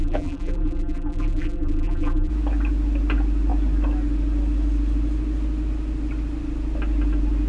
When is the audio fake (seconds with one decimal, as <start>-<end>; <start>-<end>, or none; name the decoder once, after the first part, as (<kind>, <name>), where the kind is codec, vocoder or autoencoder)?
0.0-2.3 (vocoder, BigVGAN v2)